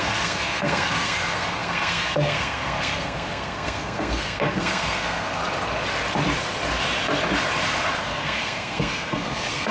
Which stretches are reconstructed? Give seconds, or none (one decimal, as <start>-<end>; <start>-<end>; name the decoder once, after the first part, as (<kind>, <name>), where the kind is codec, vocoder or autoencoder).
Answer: 0.0-5.4 (codec, SNAC); 8.0-9.7